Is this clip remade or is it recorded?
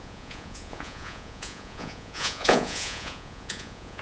remade